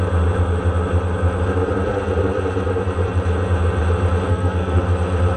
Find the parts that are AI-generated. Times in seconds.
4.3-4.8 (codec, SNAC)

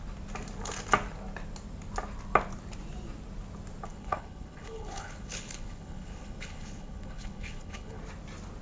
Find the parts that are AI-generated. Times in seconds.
3.9-8.0 (codec, HILCodec)

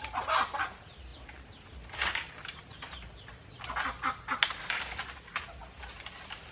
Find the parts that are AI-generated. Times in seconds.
none

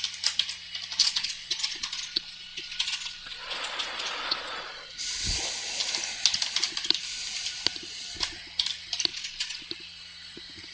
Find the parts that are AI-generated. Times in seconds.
1.0-4.9 (vocoder, Vocos); 9.1-9.6

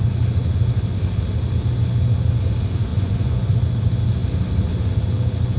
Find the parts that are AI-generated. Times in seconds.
2.9-3.5 (vocoder, Vocos)

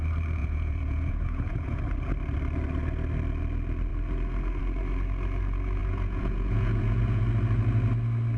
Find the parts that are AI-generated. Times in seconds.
0.4-1.8 (vocoder, Vocos); 5.8-7.2

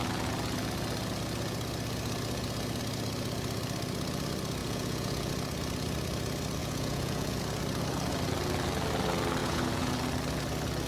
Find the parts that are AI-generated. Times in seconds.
4.6-5.3 (vocoder, Vocos); 6.6-7.4; 9.4-9.9

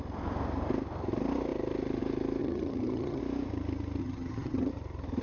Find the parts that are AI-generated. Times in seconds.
2.4-3.2 (vocoder, HiFi-GAN); 4.0-4.7